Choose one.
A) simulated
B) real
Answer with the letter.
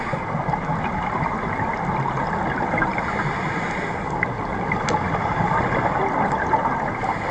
B